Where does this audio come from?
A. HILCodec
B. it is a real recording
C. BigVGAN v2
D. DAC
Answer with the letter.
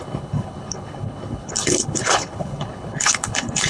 A